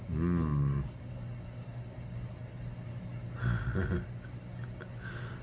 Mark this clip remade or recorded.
recorded